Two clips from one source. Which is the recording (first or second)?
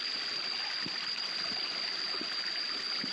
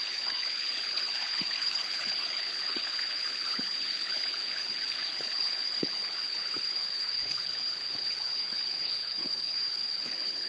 first